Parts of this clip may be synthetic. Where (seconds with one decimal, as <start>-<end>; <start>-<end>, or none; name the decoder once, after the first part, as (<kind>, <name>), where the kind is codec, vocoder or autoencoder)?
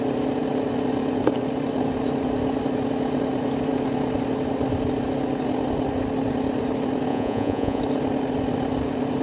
7.1-7.8 (vocoder, Vocos)